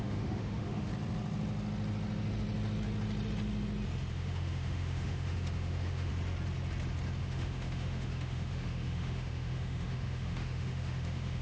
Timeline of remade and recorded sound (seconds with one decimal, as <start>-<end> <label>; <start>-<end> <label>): 0.0-0.9 remade; 0.9-4.1 recorded; 4.1-6.1 remade; 6.1-7.2 recorded; 7.2-11.4 remade